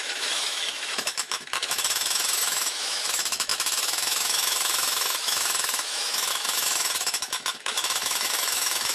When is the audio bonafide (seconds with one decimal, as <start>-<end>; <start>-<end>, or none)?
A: none